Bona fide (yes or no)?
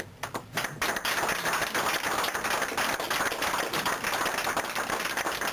yes